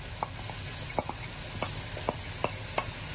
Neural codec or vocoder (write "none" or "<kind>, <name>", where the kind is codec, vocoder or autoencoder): none